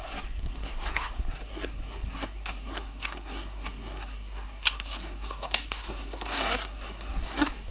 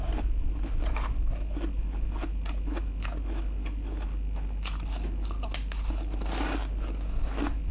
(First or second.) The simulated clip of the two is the first